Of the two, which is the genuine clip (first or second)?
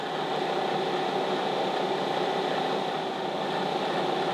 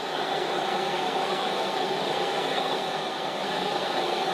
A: first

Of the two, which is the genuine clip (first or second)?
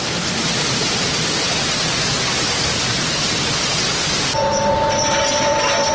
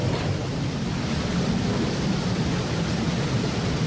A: first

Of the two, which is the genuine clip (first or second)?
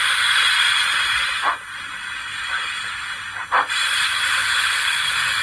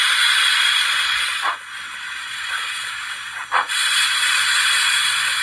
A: first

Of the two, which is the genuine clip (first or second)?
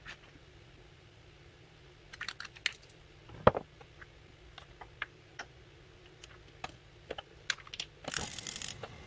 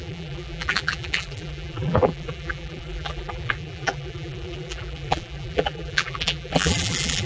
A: first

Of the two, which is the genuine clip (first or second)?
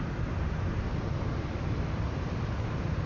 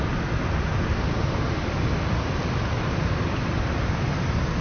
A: second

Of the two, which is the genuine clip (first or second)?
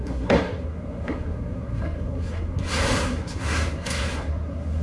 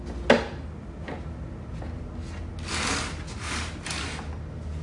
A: second